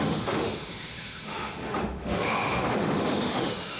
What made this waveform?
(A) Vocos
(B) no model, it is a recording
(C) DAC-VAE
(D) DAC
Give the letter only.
C